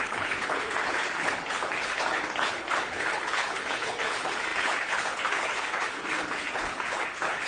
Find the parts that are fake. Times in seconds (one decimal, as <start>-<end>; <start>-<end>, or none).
0.0-7.5